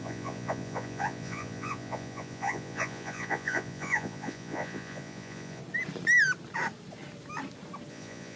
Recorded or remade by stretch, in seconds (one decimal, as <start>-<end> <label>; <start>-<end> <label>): 0.0-5.6 remade; 5.6-7.9 recorded; 7.9-8.4 remade